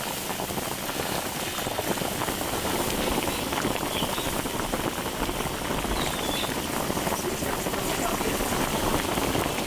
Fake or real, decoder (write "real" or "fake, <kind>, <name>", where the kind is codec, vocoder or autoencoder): real